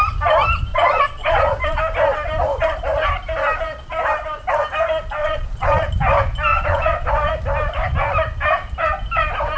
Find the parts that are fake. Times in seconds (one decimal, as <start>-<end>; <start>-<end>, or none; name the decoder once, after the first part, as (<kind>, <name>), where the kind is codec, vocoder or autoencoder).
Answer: 0.7-1.8 (vocoder, Vocos); 5.2-5.9; 6.5-7.1